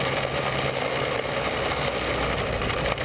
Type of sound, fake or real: real